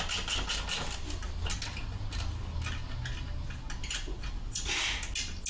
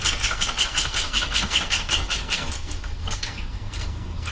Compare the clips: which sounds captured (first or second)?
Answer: first